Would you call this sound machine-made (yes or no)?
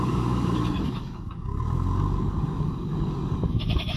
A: yes